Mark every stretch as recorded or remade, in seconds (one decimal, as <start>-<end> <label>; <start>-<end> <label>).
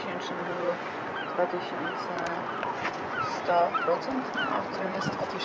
0.0-0.4 recorded; 0.4-3.2 remade; 3.2-4.7 recorded; 4.7-5.4 remade